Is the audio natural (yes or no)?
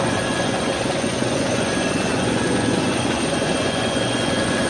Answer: no